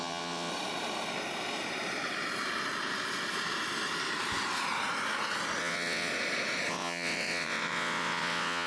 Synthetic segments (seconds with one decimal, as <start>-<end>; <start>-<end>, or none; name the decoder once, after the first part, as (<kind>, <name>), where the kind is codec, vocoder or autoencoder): 0.0-0.5 (vocoder, WaveNeXt); 5.6-6.1; 6.7-8.7